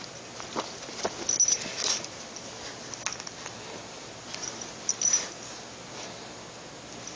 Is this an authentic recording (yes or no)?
yes